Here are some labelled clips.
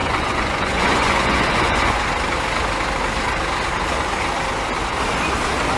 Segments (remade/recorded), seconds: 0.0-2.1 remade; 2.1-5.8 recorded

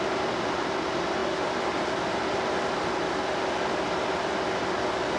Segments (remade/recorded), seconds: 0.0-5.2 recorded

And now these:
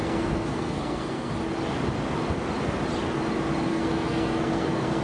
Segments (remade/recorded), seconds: 0.0-1.3 remade; 1.3-3.7 recorded; 3.7-5.0 remade